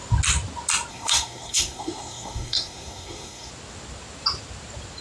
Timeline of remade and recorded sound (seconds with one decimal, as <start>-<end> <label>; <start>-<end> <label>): 0.0-0.9 recorded; 0.9-3.5 remade; 3.5-5.0 recorded